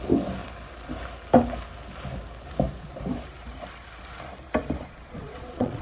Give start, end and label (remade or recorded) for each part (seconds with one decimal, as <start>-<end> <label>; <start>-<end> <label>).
0.0-4.8 recorded; 4.8-5.8 remade